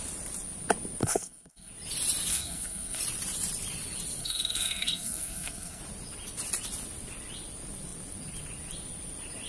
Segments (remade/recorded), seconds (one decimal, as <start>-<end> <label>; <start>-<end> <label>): 0.0-1.0 recorded; 1.0-1.7 remade; 1.7-2.3 recorded; 2.3-3.0 remade; 3.0-4.2 recorded; 4.2-5.8 remade; 5.8-9.5 recorded